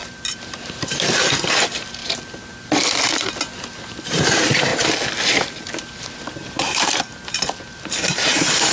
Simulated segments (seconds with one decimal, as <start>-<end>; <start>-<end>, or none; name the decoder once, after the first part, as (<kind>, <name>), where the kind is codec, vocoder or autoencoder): 0.0-2.0 (vocoder, BigVGAN v2); 4.0-4.7; 6.0-8.7